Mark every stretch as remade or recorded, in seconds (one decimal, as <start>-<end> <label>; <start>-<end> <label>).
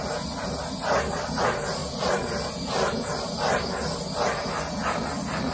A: 0.0-5.5 recorded